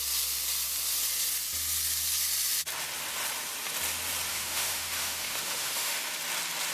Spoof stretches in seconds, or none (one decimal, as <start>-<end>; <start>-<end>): 4.3-6.0